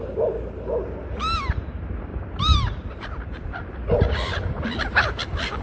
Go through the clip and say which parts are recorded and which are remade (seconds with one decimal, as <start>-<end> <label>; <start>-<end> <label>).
0.0-2.1 recorded; 2.1-5.6 remade